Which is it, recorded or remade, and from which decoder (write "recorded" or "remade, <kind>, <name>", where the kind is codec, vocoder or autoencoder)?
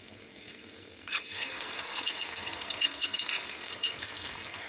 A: remade, codec, SNAC